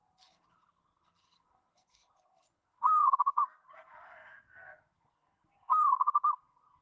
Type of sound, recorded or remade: remade